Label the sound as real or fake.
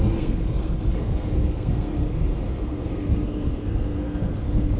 fake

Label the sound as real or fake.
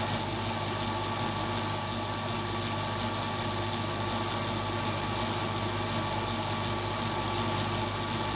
real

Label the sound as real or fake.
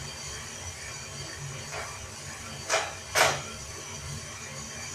real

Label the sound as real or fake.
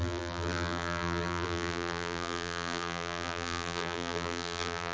fake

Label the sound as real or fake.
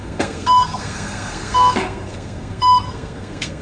fake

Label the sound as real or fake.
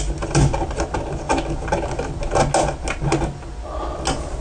real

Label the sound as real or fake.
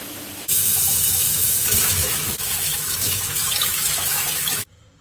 fake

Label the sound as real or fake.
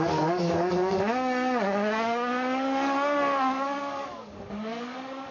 fake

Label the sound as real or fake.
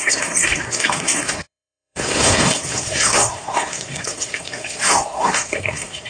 fake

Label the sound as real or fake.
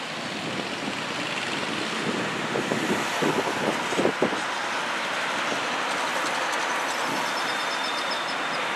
real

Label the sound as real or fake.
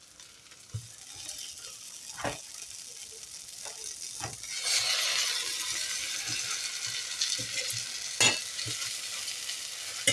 real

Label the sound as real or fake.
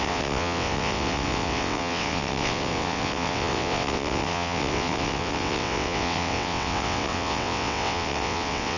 fake